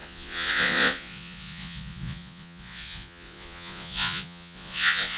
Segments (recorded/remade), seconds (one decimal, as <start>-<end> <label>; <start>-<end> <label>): 0.0-5.2 remade